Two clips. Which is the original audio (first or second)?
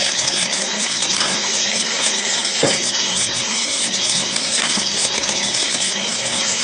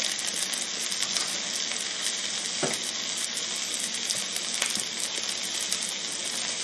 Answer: second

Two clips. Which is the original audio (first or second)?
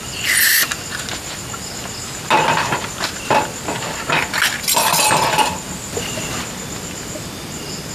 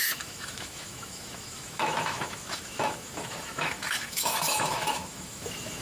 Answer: first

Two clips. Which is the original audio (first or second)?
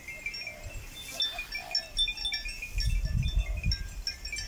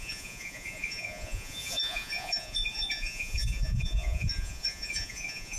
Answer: first